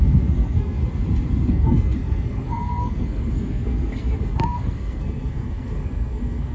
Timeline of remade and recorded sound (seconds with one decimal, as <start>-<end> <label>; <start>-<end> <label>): 0.0-0.8 remade; 0.8-1.5 recorded; 1.5-6.5 remade